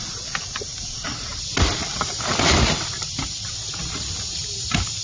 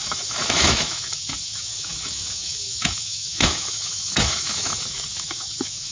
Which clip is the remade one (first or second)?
second